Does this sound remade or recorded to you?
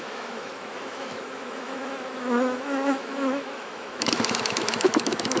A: remade